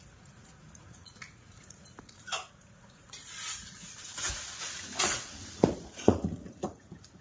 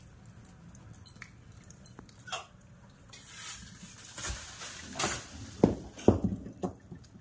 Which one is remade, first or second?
first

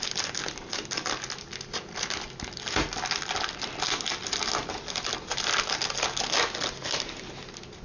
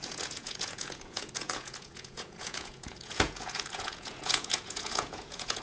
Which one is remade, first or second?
second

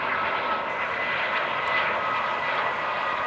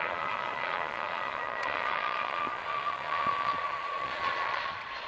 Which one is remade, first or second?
second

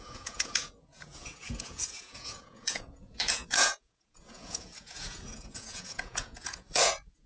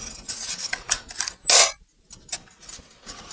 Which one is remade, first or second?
first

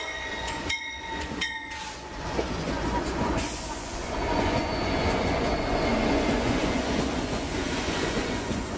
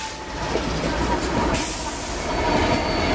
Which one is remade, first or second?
first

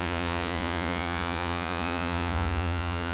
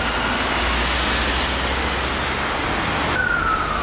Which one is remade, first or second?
first